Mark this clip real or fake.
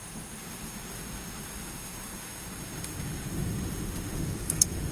fake